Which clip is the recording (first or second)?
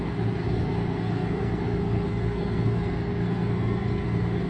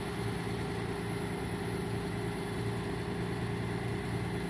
second